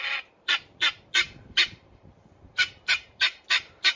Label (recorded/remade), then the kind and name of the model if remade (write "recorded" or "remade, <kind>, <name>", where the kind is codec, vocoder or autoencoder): remade, vocoder, BigVGAN v2